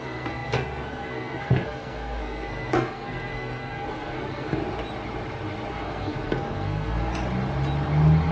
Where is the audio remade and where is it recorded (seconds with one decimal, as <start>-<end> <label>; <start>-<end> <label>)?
0.0-4.6 remade; 4.6-5.7 recorded; 5.7-7.1 remade; 7.1-8.3 recorded